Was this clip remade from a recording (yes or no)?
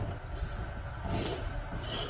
no